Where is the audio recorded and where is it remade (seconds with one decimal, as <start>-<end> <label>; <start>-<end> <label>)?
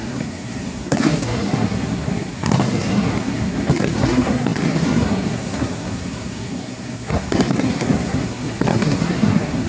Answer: 0.0-9.7 remade